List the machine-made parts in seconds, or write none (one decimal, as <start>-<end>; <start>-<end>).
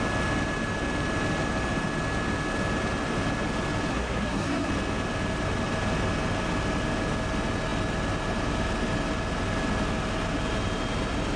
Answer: 3.9-4.7